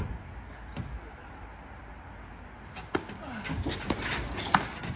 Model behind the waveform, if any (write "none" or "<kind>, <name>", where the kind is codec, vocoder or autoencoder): none